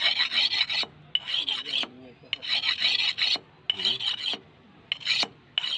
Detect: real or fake real